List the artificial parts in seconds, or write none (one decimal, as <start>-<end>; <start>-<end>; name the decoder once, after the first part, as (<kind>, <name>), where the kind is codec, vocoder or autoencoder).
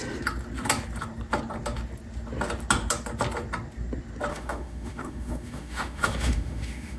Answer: 4.3-7.0 (autoencoder, DAC-VAE)